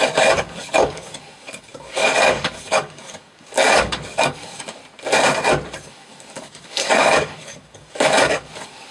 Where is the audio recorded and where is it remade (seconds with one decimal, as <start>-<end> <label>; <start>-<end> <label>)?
0.0-4.8 remade; 4.8-5.9 recorded; 5.9-8.9 remade